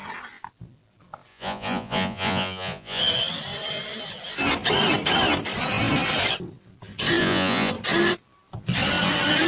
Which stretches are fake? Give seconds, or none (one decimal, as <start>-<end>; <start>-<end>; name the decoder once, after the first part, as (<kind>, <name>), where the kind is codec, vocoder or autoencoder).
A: 1.3-3.0 (vocoder, Vocos); 7.2-7.7